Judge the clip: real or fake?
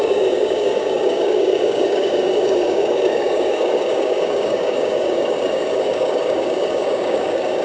fake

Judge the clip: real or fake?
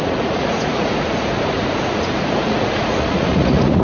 fake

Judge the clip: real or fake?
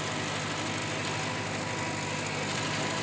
real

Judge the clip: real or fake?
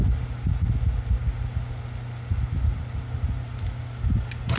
real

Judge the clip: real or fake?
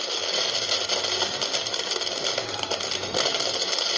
real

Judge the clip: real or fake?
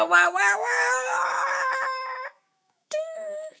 fake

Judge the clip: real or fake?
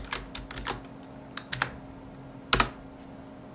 real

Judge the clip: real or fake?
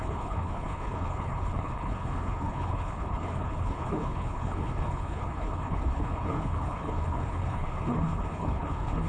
fake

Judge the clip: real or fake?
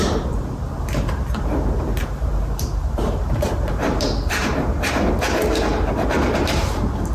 fake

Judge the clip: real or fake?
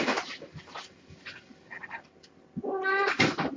real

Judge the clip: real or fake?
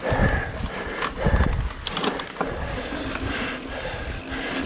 real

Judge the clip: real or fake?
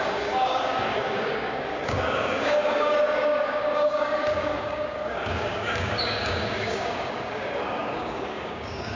fake